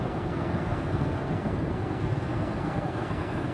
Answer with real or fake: fake